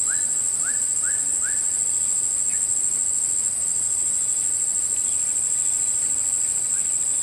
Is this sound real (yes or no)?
yes